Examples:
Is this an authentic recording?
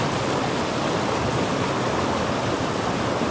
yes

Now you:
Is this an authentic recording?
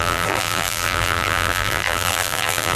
no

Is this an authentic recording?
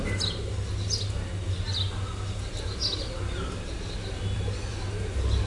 yes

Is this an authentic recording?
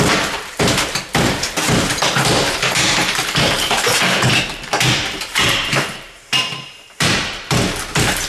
no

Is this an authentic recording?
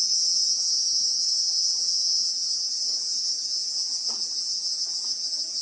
no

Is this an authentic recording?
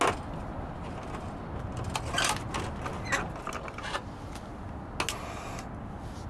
yes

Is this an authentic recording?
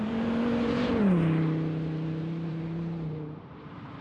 no